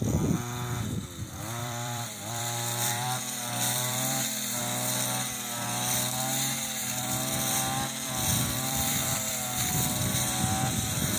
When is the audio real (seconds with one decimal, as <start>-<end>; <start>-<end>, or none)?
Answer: 0.0-1.6; 4.6-6.8; 9.3-11.2